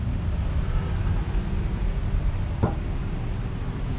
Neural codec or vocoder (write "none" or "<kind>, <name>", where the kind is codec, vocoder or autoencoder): vocoder, BigVGAN v2